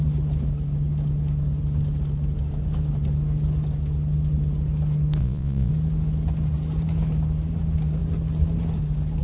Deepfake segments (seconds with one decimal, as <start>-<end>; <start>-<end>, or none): 5.2-5.7